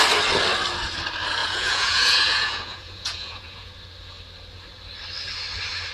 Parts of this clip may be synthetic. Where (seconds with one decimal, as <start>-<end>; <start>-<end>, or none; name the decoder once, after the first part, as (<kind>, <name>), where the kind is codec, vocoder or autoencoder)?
1.4-3.7 (vocoder, Vocos)